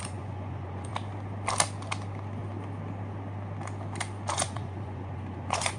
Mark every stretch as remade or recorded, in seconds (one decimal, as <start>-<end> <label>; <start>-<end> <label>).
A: 0.0-0.9 remade; 0.9-4.3 recorded; 4.3-5.8 remade